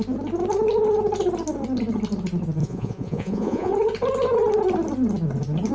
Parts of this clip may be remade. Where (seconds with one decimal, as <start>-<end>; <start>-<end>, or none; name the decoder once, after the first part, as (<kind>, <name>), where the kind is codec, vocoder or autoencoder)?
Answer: 2.6-3.7 (vocoder, Vocos)